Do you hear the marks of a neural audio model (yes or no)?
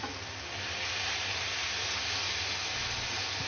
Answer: no